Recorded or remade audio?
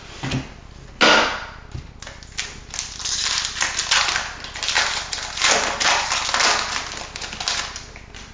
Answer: recorded